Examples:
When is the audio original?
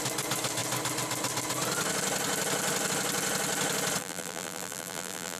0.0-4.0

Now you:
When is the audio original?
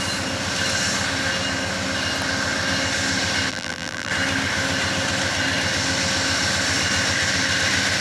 0.0-3.5; 4.1-8.0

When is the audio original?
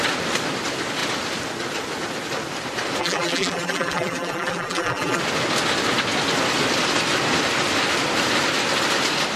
0.0-3.0; 5.2-9.4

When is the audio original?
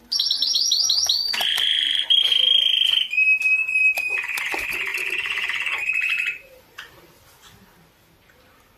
0.0-4.9; 7.1-8.8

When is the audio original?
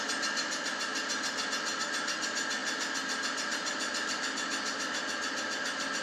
0.0-6.0